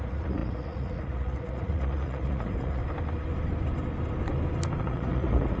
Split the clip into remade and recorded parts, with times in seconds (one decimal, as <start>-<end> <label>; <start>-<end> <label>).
0.0-2.8 remade; 2.8-4.8 recorded; 4.8-5.6 remade